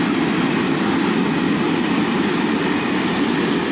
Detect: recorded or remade recorded